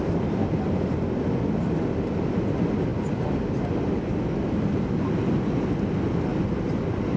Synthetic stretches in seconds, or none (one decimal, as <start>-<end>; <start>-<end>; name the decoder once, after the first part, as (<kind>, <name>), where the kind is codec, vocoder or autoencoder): none